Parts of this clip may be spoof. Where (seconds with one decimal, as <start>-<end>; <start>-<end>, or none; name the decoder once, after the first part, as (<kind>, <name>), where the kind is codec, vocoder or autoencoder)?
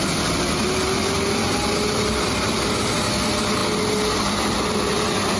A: none